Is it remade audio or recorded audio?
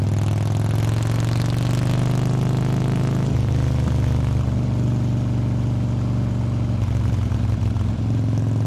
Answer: recorded